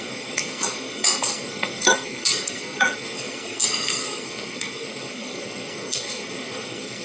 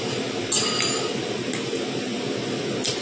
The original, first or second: second